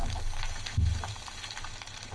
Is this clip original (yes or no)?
yes